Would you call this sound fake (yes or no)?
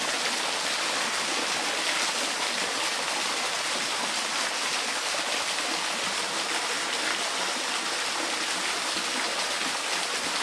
no